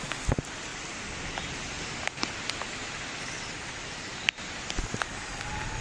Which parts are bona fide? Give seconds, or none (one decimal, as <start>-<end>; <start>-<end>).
0.0-5.8